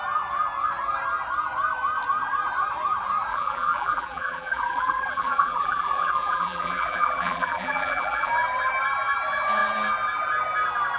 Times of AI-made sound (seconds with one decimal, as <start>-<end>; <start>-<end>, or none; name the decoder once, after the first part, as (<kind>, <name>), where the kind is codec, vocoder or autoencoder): 3.3-8.3 (vocoder, BigVGAN v2)